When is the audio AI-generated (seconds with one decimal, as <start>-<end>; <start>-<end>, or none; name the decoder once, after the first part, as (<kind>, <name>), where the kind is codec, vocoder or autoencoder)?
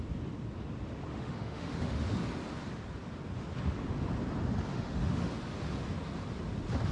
1.1-2.2 (autoencoder, DAC-VAE); 4.7-5.3